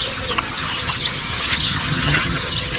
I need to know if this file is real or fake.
fake